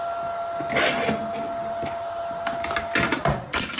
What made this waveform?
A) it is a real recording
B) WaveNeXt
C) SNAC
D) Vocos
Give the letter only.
A